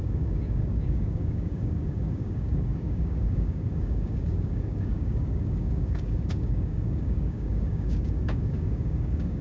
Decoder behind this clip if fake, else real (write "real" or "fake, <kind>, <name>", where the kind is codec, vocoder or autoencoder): fake, codec, DAC